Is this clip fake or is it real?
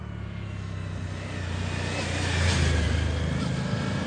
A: real